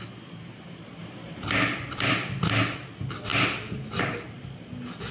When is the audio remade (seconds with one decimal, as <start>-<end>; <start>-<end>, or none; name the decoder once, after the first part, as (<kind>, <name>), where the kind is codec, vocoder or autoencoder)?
none